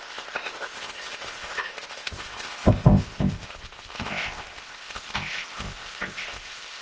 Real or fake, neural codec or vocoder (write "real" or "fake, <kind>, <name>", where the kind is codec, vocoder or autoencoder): fake, codec, ZipCodec